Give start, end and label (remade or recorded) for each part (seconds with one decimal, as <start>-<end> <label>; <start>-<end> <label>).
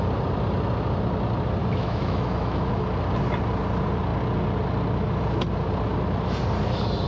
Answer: 0.0-1.6 recorded; 1.6-2.7 remade; 2.7-7.1 recorded